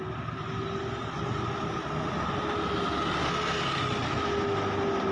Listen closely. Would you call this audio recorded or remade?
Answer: recorded